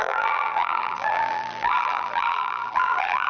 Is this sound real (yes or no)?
no